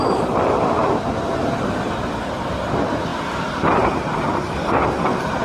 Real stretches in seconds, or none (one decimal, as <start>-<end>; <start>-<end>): 0.0-5.4